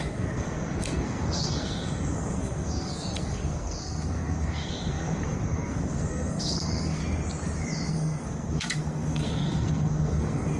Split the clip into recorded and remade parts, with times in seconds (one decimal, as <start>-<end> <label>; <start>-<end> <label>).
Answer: 0.0-7.0 remade; 7.0-7.9 recorded; 7.9-10.6 remade